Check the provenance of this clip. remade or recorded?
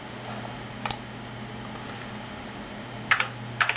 recorded